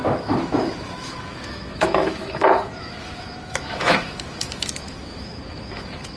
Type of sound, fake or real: fake